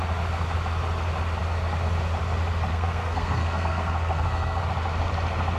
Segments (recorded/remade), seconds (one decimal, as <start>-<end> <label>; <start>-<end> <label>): 0.0-2.7 recorded; 2.7-4.6 remade; 4.6-5.6 recorded

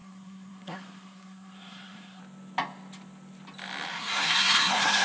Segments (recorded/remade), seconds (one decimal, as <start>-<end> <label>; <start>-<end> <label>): 0.0-2.2 remade; 2.2-3.9 recorded; 3.9-5.0 remade

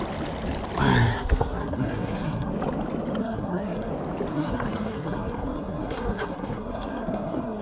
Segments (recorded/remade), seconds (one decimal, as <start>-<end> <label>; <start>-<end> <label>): 0.0-1.1 recorded; 1.1-2.5 remade; 2.5-3.2 recorded; 3.2-3.9 remade; 3.9-4.3 recorded; 4.3-7.6 remade

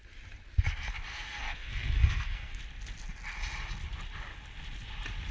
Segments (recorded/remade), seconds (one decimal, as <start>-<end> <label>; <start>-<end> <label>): 0.0-1.1 recorded; 1.1-2.6 remade; 2.6-5.3 recorded